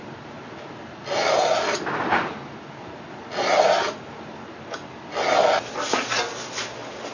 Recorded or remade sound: recorded